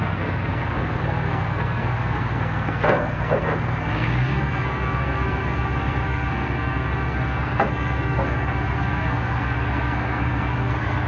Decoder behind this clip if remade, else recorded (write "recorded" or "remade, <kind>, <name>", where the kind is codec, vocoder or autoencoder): remade, codec, SNAC